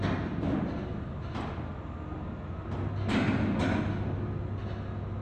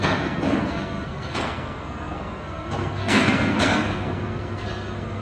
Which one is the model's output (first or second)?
second